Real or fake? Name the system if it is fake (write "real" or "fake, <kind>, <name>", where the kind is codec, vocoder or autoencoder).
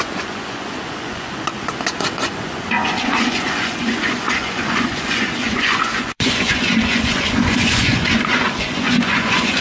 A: fake, vocoder, Vocos